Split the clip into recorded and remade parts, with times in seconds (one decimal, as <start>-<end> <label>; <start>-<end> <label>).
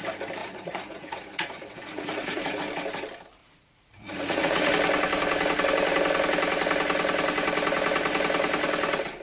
0.0-0.4 recorded; 0.4-2.6 remade; 2.6-3.4 recorded; 3.4-4.7 remade; 4.7-9.2 recorded